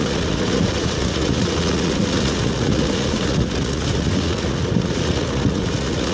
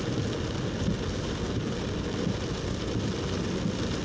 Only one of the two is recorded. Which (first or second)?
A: second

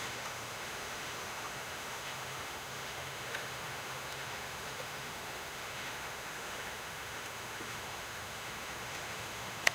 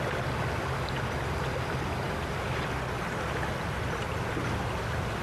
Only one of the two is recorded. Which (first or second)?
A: second